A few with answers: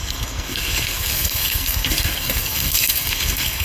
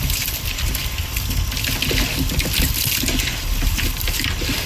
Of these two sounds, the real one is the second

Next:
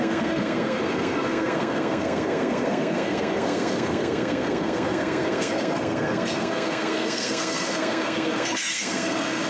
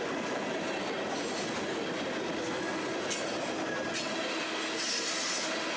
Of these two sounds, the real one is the second